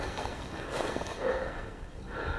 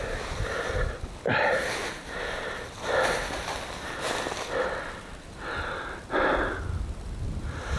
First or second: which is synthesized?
first